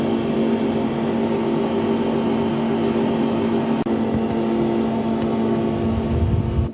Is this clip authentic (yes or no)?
yes